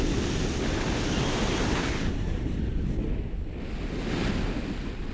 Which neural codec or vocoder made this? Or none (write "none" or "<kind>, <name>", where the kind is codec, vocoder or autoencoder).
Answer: none